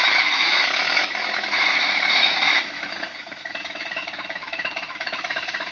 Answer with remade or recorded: remade